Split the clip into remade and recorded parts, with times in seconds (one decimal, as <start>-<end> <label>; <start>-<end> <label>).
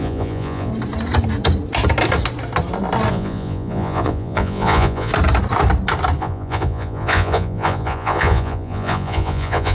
0.0-0.7 remade; 0.7-3.1 recorded; 3.1-5.1 remade; 5.1-6.2 recorded; 6.2-9.7 remade